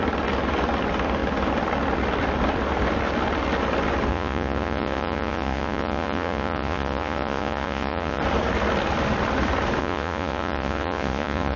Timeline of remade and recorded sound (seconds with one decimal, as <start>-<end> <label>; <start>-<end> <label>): 0.0-4.1 recorded; 4.1-8.2 remade; 8.2-9.8 recorded; 9.8-11.6 remade